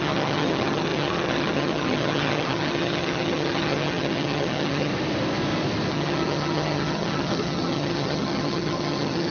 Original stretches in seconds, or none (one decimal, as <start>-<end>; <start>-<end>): 4.9-5.9